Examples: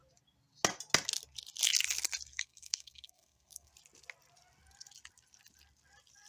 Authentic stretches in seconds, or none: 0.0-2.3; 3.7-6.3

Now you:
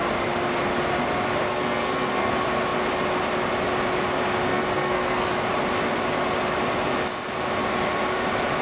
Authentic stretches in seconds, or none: 0.0-1.5; 2.3-4.5; 5.3-8.6

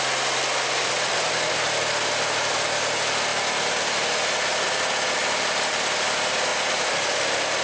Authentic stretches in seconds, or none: 0.0-7.6